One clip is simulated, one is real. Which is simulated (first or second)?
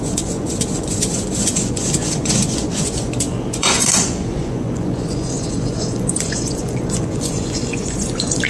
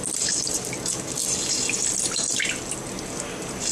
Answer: first